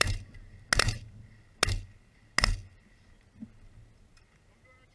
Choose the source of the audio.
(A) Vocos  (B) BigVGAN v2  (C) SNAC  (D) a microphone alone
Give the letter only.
D